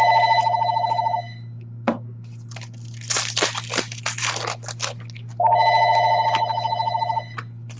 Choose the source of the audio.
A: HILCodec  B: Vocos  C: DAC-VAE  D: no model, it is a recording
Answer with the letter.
D